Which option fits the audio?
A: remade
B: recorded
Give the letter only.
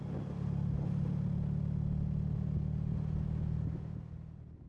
B